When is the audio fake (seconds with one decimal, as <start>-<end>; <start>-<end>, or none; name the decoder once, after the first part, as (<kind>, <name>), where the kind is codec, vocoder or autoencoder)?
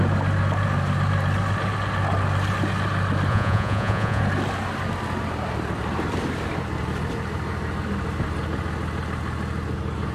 3.3-4.2 (vocoder, Vocos)